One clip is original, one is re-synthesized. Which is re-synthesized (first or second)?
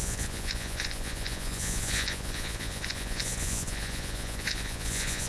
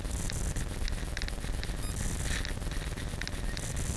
first